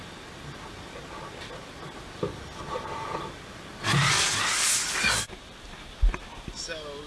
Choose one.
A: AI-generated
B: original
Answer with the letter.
B